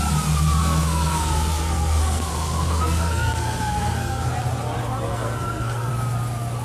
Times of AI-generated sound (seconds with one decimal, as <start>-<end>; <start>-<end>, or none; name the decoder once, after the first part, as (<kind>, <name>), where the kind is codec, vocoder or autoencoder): 0.6-4.3 (codec, SNAC); 5.1-5.9

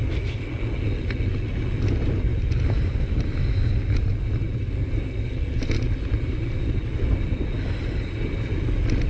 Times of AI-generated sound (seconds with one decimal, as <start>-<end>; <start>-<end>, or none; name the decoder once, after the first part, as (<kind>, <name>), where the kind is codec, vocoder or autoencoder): none

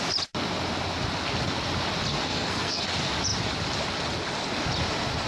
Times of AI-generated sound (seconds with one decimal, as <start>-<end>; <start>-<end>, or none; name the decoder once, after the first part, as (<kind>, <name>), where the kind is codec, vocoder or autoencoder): 2.1-2.8 (codec, SNAC)

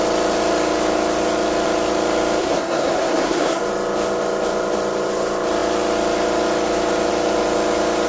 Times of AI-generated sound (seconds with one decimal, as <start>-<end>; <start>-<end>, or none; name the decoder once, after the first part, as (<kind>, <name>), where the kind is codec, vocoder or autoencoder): 2.4-3.6 (codec, SNAC)

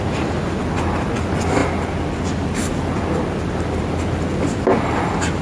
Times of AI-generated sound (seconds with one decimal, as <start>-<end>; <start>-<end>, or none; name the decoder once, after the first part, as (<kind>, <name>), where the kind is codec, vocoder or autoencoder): none

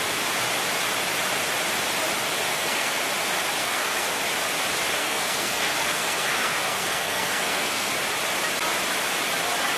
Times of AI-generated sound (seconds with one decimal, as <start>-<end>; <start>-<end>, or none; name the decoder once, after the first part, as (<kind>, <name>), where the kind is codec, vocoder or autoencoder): 2.5-3.0 (codec, SNAC); 3.6-4.1; 5.0-7.9

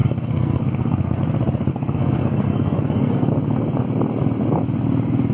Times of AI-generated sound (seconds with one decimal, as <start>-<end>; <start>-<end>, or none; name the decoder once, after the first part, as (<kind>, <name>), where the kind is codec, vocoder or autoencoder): 0.0-1.2 (codec, SNAC); 1.7-3.3

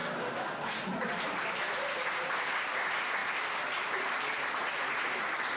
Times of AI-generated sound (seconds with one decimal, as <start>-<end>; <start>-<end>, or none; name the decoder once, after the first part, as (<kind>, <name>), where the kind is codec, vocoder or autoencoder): none